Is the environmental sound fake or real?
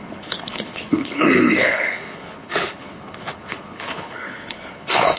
fake